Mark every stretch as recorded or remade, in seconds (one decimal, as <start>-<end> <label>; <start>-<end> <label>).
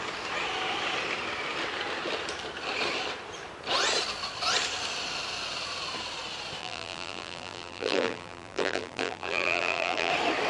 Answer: 0.0-6.6 recorded; 6.6-10.1 remade; 10.1-10.5 recorded